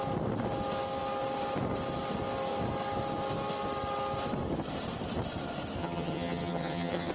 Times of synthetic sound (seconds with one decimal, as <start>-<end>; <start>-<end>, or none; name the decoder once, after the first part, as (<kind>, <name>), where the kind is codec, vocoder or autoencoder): 5.8-7.1 (vocoder, HiFi-GAN)